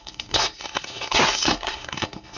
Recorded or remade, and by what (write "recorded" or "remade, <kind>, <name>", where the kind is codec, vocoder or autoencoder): remade, codec, SNAC